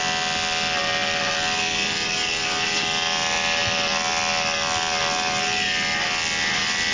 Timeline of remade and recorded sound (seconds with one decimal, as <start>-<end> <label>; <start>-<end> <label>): 0.0-6.9 recorded